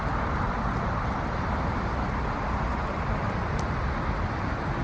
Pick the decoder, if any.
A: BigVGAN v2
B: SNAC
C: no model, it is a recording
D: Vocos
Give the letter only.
C